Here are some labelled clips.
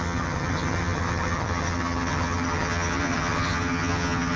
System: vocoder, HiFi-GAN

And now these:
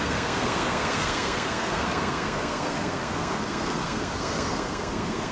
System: codec, SNAC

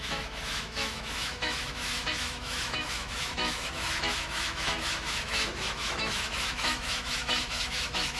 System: autoencoder, DAC-VAE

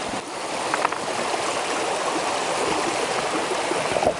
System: none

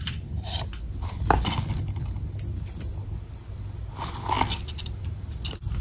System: none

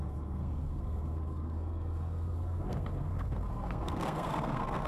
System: codec, SNAC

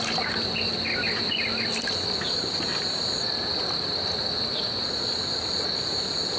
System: none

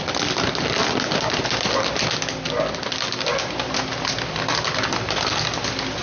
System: none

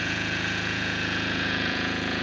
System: vocoder, Vocos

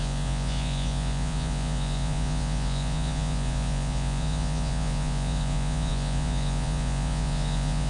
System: vocoder, Vocos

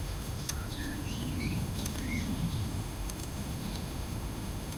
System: autoencoder, DAC-VAE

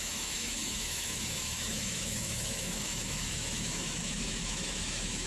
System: autoencoder, DAC-VAE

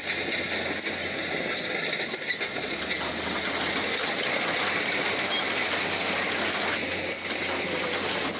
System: none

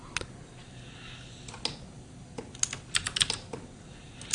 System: none